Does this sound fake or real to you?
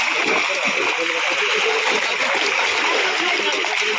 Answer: real